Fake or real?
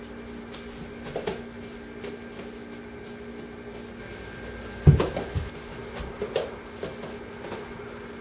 real